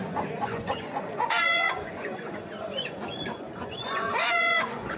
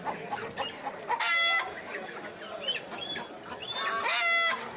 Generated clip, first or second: first